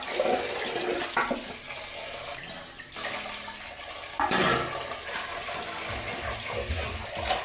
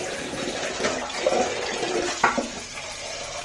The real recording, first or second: first